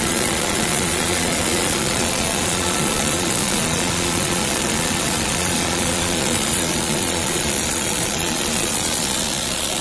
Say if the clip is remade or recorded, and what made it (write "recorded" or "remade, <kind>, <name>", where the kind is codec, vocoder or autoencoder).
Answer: remade, vocoder, Vocos